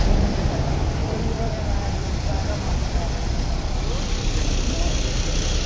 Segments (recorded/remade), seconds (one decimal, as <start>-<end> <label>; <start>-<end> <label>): 0.0-1.0 recorded; 1.0-4.4 remade; 4.4-5.7 recorded